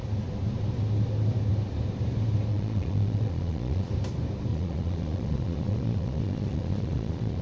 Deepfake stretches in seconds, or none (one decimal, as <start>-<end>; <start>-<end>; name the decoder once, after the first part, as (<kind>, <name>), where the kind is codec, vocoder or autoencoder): 2.5-3.9 (vocoder, Vocos); 4.5-7.4